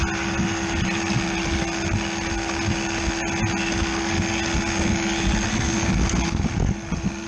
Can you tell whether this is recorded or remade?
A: recorded